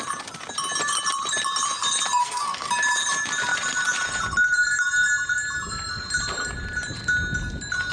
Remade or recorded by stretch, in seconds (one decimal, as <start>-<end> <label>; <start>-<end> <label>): 0.0-2.2 recorded; 2.2-2.7 remade; 2.7-7.9 recorded